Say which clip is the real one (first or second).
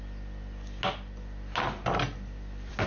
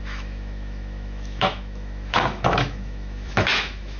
first